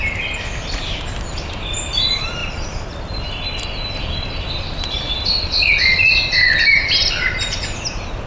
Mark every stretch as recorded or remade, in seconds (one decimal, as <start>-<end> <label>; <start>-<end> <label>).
0.0-8.3 recorded